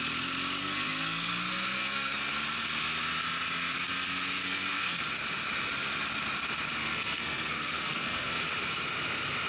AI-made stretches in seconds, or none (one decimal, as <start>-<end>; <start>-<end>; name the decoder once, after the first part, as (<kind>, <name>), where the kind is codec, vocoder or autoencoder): 0.6-1.3 (codec, SNAC); 1.8-2.3; 4.4-5.0; 6.8-8.4